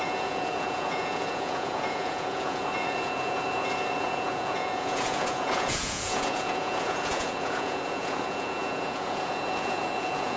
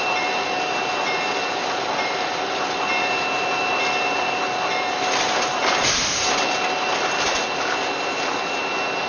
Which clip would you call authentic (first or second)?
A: second